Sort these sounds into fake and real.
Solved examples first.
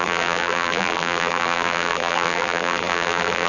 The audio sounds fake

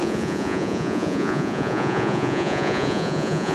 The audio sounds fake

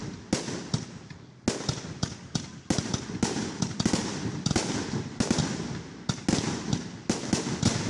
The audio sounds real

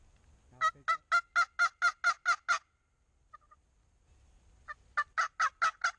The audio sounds real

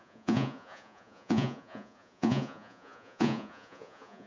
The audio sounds fake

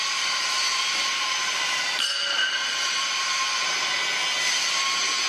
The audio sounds real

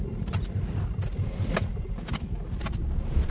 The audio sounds real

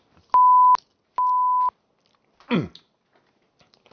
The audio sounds real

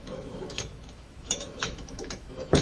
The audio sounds fake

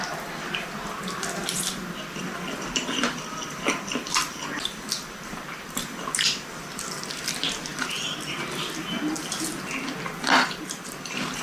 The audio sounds real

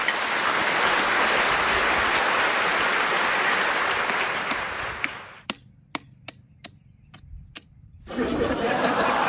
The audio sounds real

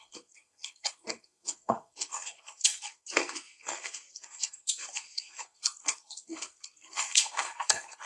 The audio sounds fake